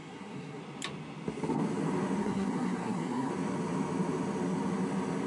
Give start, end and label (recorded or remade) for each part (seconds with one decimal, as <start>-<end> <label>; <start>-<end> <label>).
0.0-0.6 remade; 0.6-2.2 recorded; 2.2-3.3 remade; 3.3-5.3 recorded